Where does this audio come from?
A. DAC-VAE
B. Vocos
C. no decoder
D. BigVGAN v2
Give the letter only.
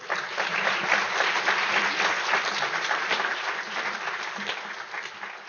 C